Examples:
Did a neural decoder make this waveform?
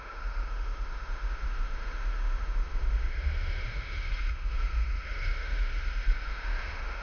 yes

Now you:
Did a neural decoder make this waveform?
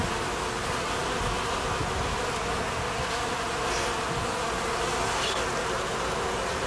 no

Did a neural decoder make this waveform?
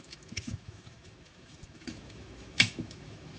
yes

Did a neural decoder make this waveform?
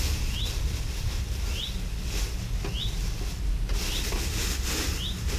no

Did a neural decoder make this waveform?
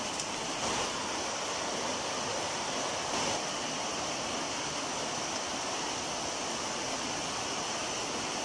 no